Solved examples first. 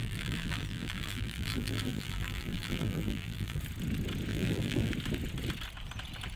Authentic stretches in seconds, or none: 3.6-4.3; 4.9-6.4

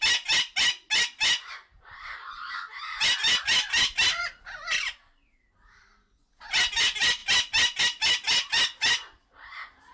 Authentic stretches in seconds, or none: 0.0-9.9

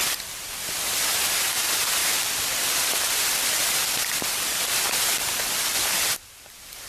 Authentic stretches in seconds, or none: 0.7-2.0; 5.5-6.9

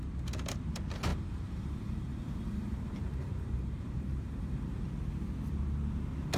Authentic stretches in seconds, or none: 0.0-1.1; 4.9-6.4

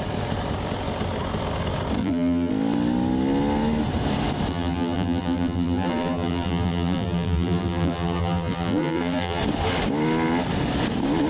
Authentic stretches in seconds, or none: 0.0-2.0; 2.5-4.5; 9.4-11.3

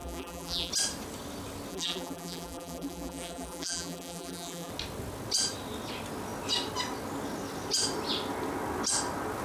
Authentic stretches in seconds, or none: 0.7-1.7; 4.7-9.4

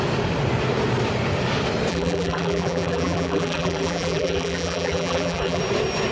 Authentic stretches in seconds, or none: 0.0-1.9; 5.6-6.1